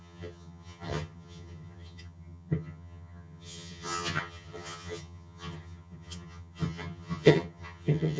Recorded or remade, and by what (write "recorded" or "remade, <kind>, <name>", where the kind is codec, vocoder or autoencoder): remade, vocoder, HiFi-GAN